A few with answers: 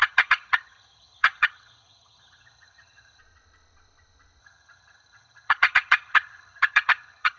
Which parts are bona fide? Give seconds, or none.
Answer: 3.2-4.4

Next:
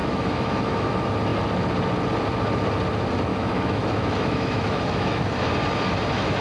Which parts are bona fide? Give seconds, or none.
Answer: 0.9-3.3; 5.3-6.4

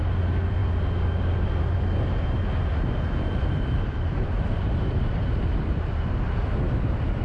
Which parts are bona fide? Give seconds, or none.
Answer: 0.0-2.7; 6.5-7.2

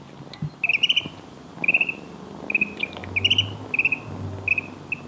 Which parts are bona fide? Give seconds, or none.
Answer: 0.0-5.1

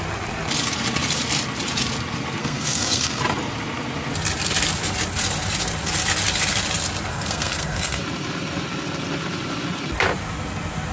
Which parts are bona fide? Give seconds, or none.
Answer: 0.0-2.4; 3.2-7.1; 8.0-10.9

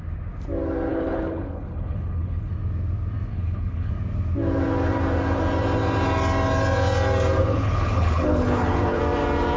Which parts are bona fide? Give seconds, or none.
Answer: 0.0-0.9; 2.5-3.3; 3.9-7.4; 9.0-9.6